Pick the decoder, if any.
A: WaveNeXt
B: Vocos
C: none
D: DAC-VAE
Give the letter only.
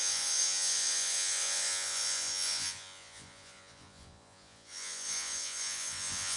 B